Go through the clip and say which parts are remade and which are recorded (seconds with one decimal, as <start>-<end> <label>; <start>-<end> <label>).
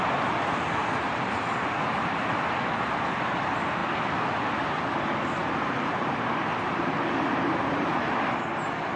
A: 0.0-0.8 recorded; 0.8-2.2 remade; 2.2-5.4 recorded; 5.4-8.1 remade; 8.1-9.0 recorded